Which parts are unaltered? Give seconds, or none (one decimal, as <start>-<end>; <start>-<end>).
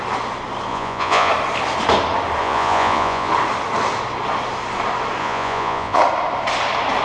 0.0-0.7; 1.3-2.4; 3.3-5.2; 6.0-7.0